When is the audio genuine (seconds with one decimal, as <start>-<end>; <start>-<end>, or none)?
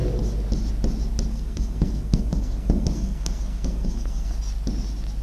0.0-1.3; 4.4-5.2